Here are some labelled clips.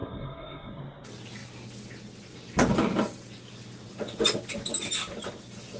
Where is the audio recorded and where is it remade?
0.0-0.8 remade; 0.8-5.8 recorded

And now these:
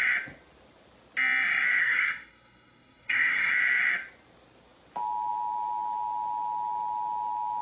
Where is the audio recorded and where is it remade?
0.0-1.8 recorded; 1.8-3.5 remade; 3.5-7.6 recorded